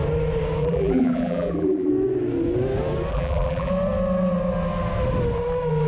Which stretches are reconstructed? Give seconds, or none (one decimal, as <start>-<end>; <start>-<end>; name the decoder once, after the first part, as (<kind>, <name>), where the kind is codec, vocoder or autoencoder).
0.6-1.9 (vocoder, BigVGAN v2); 3.1-3.7